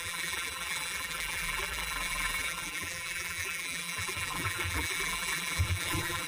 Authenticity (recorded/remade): remade